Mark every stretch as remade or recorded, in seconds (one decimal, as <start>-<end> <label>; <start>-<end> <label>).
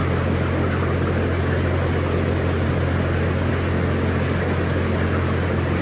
0.0-5.8 recorded